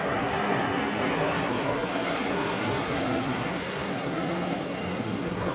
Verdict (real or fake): fake